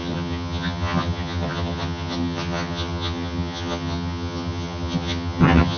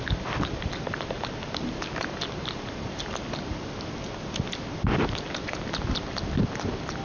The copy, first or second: first